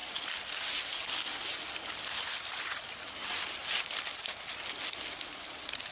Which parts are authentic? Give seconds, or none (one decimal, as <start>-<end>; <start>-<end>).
0.0-5.9